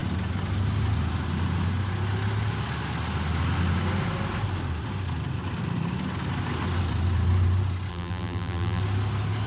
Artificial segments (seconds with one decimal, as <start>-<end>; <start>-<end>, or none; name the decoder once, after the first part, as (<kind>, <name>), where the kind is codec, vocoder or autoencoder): 7.9-8.8 (vocoder, BigVGAN v2)